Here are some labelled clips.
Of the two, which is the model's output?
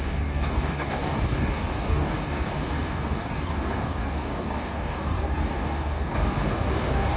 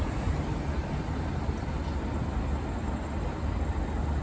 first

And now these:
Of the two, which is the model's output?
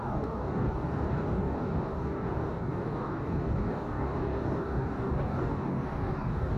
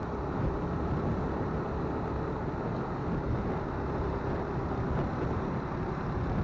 first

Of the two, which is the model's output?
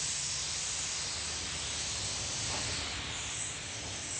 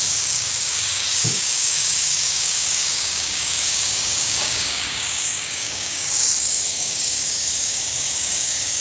second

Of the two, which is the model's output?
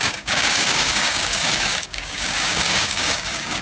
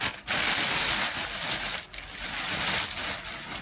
first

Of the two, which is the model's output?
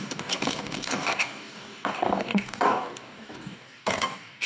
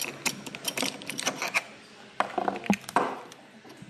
first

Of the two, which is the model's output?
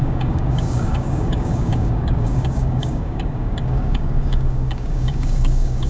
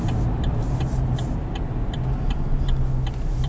first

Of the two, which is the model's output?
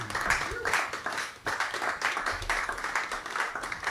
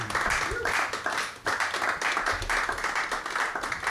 first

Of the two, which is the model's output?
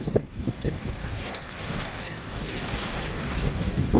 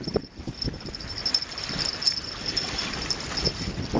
first